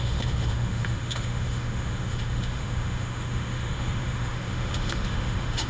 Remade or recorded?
remade